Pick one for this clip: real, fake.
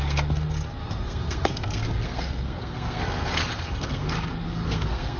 fake